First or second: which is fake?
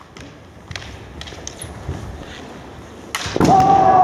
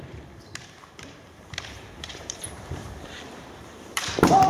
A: second